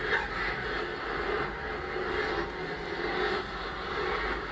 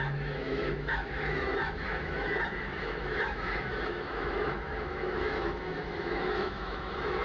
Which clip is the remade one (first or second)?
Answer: second